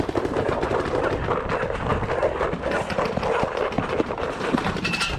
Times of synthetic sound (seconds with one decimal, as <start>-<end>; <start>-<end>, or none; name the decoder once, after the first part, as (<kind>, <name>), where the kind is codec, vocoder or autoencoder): none